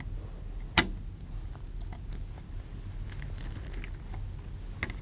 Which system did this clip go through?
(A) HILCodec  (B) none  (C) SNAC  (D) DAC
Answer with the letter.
B